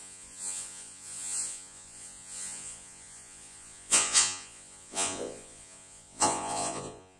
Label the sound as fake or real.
fake